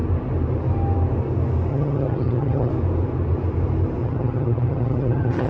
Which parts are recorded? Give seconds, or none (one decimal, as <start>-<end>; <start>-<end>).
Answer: 0.0-1.7; 2.7-4.0

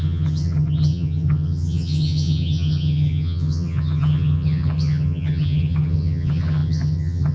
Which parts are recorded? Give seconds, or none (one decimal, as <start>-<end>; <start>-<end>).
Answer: none

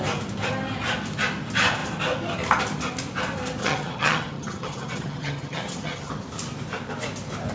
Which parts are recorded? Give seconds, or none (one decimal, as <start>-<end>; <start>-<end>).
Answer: 0.0-3.6; 6.1-7.5

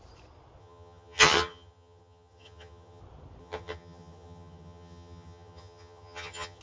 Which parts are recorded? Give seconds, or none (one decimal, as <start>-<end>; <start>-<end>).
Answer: 0.0-0.6; 3.0-3.4

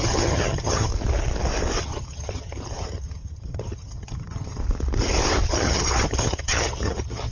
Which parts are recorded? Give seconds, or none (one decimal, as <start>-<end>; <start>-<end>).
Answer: 0.9-1.8; 4.6-5.5

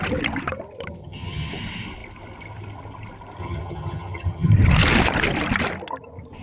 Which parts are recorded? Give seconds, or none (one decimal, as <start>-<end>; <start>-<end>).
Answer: 0.0-1.0; 1.5-3.4; 4.5-6.4

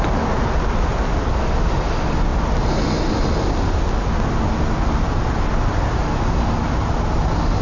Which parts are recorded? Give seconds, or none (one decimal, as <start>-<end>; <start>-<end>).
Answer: 0.0-7.6

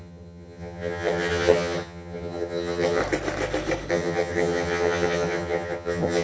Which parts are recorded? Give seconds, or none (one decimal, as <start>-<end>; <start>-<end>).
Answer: 3.0-3.9